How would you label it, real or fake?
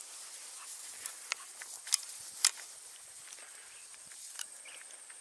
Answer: real